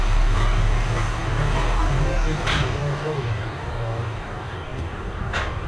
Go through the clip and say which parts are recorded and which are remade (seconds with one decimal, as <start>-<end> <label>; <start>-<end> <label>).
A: 0.0-5.7 remade